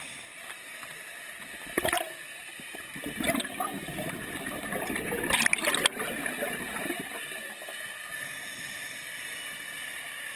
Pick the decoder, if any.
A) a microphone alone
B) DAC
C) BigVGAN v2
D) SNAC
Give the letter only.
A